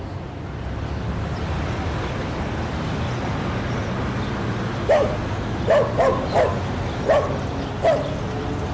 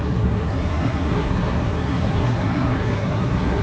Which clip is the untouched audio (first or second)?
first